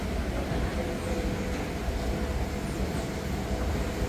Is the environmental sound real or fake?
real